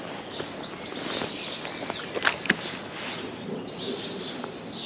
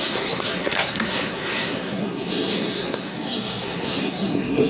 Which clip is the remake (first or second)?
second